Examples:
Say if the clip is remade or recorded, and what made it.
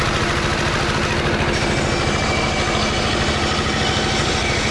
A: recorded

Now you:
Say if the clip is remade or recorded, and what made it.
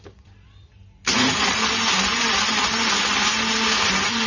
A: recorded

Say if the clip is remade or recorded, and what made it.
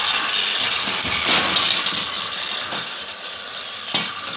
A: recorded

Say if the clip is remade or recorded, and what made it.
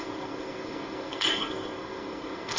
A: remade, codec, SNAC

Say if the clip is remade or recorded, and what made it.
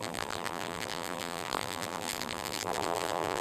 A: remade, vocoder, BigVGAN v2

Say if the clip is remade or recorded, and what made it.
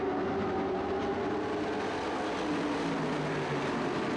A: recorded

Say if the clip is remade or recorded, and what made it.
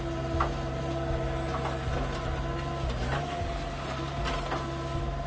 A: recorded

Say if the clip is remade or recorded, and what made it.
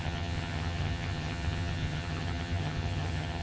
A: remade, vocoder, HiFi-GAN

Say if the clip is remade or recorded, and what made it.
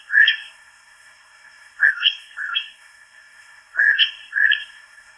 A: remade, codec, SNAC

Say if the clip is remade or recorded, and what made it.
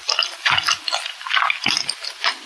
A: recorded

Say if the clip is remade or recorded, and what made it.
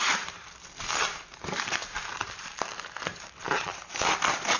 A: remade, vocoder, BigVGAN v2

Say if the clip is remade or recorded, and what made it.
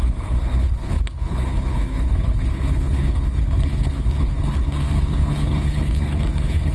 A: remade, codec, HILCodec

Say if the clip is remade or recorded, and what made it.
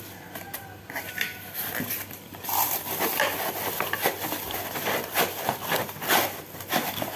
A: remade, vocoder, BigVGAN v2